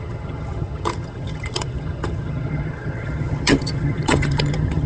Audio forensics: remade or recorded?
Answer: remade